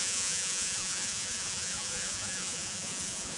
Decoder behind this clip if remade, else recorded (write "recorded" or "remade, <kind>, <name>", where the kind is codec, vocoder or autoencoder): remade, vocoder, Vocos